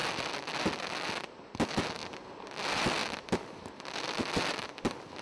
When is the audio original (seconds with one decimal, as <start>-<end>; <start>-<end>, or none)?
0.0-5.2